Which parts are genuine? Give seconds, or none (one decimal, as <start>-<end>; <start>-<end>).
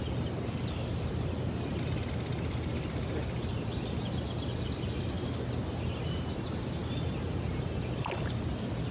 0.0-8.9